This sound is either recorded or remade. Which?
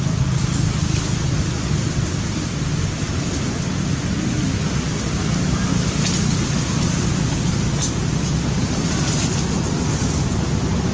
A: recorded